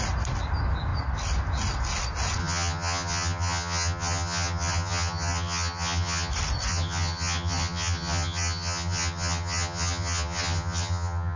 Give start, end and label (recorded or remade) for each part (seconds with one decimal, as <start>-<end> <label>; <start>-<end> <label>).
0.0-2.4 recorded; 2.4-6.3 remade; 6.3-6.7 recorded; 6.7-11.4 remade